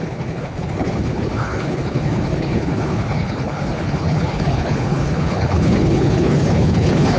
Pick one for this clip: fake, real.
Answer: fake